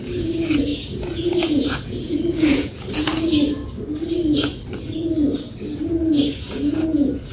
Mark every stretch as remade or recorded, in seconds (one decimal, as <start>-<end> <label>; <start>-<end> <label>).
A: 0.0-3.6 remade; 3.6-6.3 recorded; 6.3-7.3 remade